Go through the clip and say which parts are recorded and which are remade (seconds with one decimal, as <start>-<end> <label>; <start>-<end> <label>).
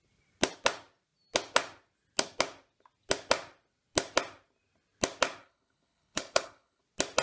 0.0-5.4 recorded; 5.4-6.8 remade; 6.8-7.2 recorded